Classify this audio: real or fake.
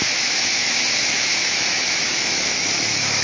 fake